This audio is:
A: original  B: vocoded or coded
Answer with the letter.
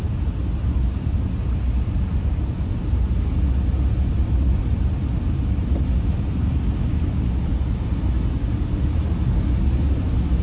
A